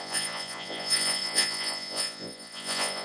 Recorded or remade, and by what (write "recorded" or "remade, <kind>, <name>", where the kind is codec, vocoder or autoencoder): remade, vocoder, Vocos